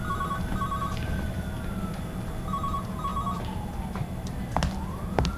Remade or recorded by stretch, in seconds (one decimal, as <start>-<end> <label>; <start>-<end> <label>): 0.0-5.4 recorded